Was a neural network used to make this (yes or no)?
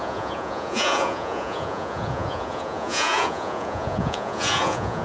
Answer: yes